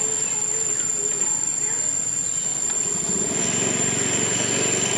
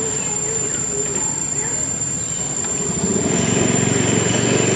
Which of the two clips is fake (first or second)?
second